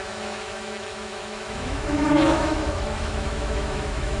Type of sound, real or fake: fake